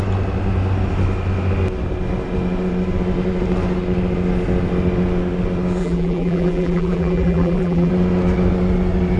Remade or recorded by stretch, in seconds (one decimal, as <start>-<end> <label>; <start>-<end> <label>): 0.0-5.8 recorded; 5.8-7.9 remade; 7.9-9.2 recorded